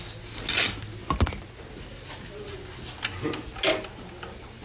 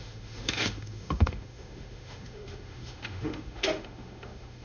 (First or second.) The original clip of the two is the first